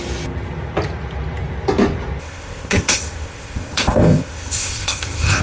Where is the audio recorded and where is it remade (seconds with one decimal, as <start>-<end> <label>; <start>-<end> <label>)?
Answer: 0.0-2.2 recorded; 2.2-5.4 remade